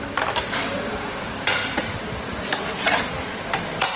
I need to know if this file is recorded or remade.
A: recorded